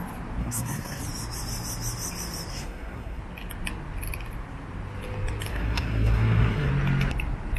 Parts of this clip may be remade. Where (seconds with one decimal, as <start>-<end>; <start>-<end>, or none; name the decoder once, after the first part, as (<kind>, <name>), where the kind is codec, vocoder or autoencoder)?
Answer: 0.4-1.0 (codec, SNAC); 2.5-3.2; 5.5-6.7